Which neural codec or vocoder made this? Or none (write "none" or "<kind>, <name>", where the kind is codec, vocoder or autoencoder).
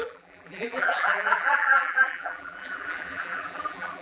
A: vocoder, BigVGAN v2